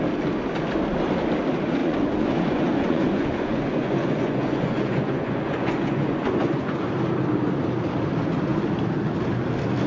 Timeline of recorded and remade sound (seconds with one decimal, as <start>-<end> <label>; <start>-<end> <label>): 0.0-1.8 recorded; 1.8-6.9 remade; 6.9-9.9 recorded